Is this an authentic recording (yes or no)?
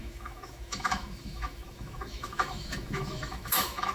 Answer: no